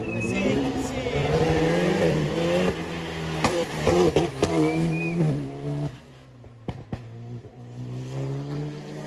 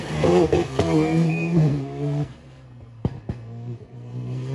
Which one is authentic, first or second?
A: first